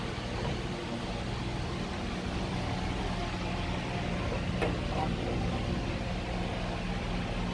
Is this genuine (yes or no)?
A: yes